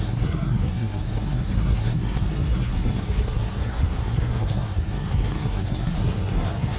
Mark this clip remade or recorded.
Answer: remade